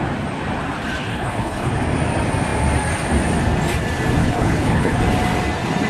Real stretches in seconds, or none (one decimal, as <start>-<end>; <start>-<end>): 0.0-1.1; 1.7-4.2; 5.0-5.9